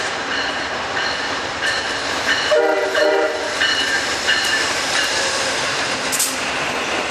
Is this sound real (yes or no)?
no